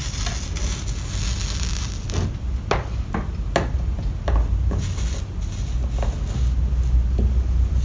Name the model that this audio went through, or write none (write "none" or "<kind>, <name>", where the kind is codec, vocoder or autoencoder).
none